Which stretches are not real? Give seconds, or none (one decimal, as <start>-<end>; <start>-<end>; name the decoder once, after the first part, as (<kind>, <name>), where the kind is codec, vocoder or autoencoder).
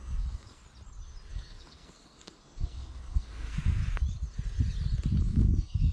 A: 0.0-0.6 (codec, SNAC); 1.3-3.8; 5.2-5.9